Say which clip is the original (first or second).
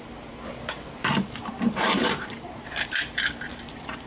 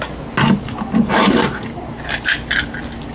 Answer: second